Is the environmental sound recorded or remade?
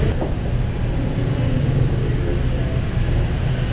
recorded